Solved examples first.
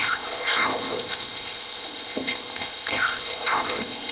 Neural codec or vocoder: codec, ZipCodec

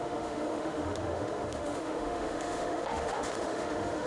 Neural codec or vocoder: autoencoder, DAC-VAE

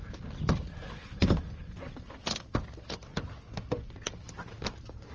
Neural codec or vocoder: none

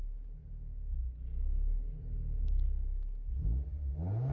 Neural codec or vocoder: none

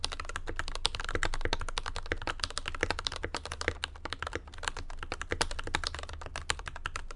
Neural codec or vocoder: none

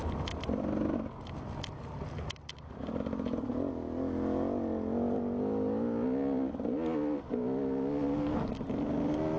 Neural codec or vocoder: none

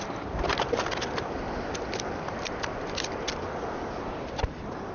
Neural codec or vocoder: vocoder, BigVGAN v2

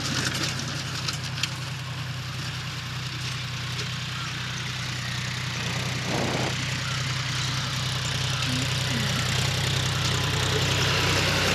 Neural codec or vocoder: none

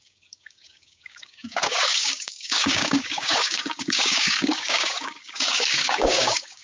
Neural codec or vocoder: codec, DAC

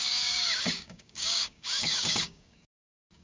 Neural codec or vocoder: codec, DAC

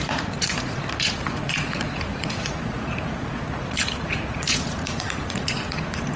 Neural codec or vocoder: vocoder, Vocos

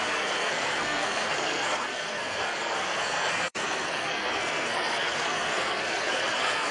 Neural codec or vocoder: codec, SNAC